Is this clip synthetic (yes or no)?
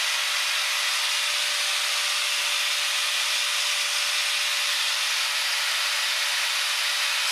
no